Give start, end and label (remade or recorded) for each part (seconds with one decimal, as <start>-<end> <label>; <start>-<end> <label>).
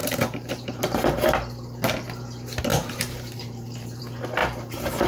0.0-0.8 remade; 0.8-2.7 recorded; 2.7-4.0 remade; 4.0-4.4 recorded; 4.4-5.1 remade